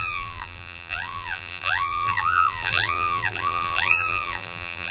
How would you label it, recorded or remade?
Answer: remade